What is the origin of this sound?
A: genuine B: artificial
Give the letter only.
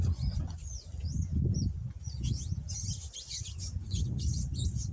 B